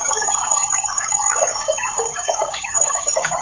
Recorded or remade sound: remade